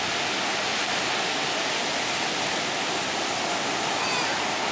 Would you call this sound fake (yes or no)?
no